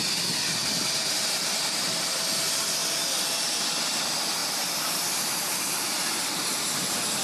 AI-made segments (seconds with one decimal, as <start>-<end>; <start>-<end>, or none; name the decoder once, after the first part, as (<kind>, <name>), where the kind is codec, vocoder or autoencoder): 0.6-1.9 (vocoder, BigVGAN v2); 4.4-6.6